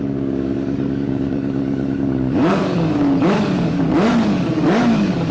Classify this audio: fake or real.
fake